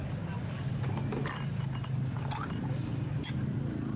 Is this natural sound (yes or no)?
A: yes